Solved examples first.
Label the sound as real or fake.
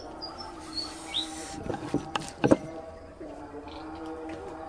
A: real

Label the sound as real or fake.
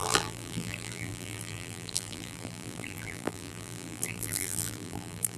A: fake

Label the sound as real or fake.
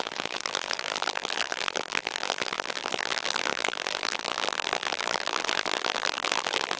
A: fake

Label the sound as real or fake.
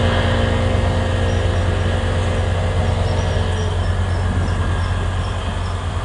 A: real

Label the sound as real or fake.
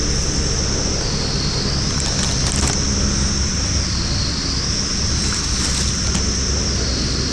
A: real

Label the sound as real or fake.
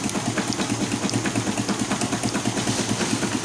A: real